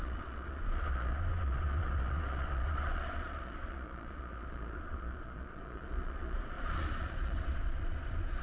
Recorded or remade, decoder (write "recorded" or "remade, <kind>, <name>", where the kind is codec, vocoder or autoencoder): remade, vocoder, Vocos